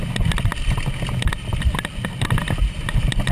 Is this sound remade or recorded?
recorded